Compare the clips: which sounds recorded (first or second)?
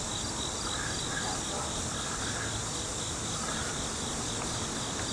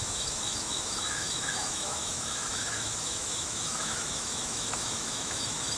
first